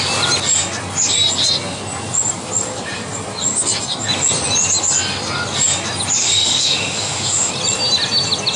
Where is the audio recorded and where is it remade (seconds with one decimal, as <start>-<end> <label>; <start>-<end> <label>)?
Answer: 0.0-6.2 recorded; 6.2-7.5 remade; 7.5-8.6 recorded